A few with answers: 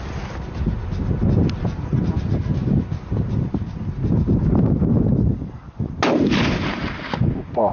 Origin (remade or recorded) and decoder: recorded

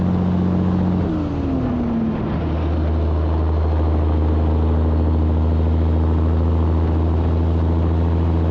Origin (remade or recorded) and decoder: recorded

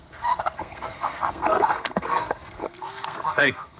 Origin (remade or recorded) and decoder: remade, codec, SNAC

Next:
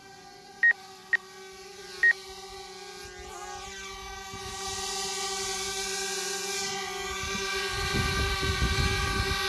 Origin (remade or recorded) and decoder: recorded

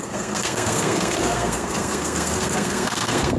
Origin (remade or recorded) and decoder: remade, codec, SNAC